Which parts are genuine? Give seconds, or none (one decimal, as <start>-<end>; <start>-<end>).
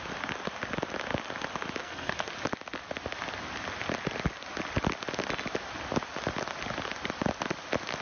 0.0-1.8; 2.3-8.0